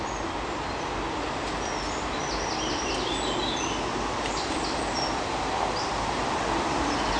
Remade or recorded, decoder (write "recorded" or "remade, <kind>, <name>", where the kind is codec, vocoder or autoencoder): remade, vocoder, BigVGAN v2